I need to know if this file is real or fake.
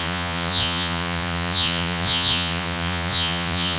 fake